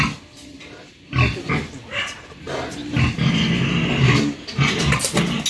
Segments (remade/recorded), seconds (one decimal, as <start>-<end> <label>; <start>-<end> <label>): 0.0-5.5 recorded